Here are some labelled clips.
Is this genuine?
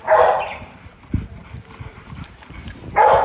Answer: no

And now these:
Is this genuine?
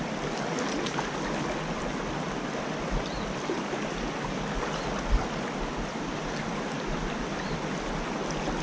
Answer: yes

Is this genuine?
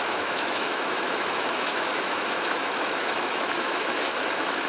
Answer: no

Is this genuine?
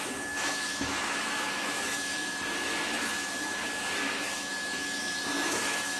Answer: no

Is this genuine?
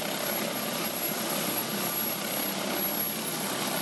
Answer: yes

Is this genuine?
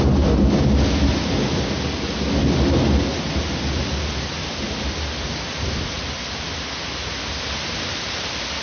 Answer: yes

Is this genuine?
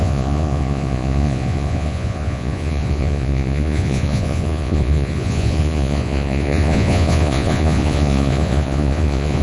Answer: no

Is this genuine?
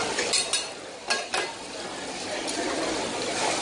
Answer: yes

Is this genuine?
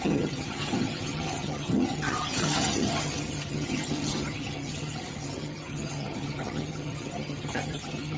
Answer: no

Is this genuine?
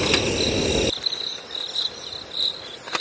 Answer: yes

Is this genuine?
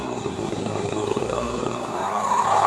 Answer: no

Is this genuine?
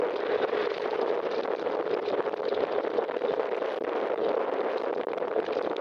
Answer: no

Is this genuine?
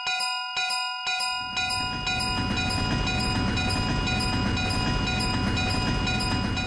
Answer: yes